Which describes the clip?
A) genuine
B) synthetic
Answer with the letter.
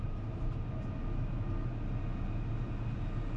A